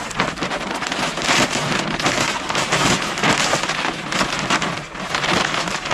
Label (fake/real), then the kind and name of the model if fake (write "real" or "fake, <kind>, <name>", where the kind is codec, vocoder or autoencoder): real